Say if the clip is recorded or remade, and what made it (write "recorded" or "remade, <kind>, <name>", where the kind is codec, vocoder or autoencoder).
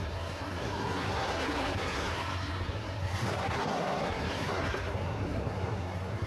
remade, codec, SNAC